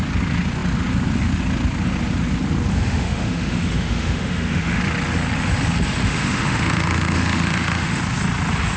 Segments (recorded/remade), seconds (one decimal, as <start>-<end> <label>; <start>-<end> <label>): 0.0-2.7 recorded; 2.7-4.8 remade; 4.8-6.0 recorded; 6.0-8.0 remade; 8.0-8.8 recorded